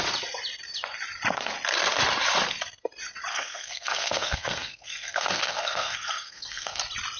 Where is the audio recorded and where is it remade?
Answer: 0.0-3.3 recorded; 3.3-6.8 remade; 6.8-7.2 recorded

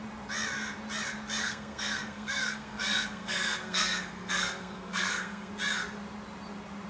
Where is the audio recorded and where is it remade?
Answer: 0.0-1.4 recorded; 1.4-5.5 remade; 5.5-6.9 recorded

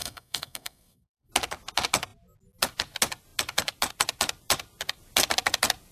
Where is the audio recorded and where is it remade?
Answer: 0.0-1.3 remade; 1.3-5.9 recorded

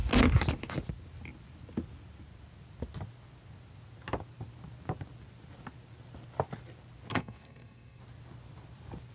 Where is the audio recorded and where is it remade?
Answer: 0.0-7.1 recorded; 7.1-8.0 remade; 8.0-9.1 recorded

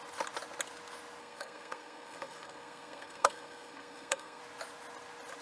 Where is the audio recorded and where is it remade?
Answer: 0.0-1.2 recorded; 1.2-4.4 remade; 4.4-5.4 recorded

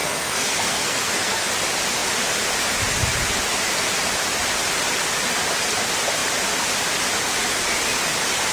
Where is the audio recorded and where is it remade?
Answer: 0.0-1.5 remade; 1.5-8.5 recorded

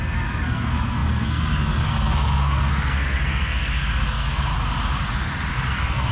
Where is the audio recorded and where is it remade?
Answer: 0.0-4.5 remade; 4.5-5.5 recorded; 5.5-6.1 remade